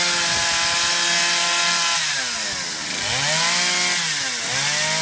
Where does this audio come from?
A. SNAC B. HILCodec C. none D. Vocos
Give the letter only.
C